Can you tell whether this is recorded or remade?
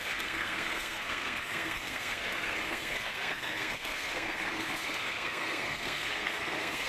remade